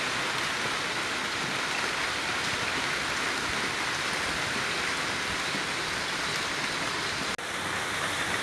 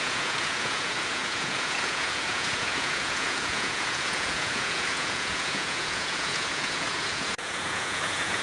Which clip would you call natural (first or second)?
first